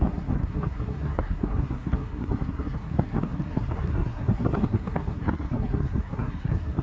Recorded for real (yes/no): no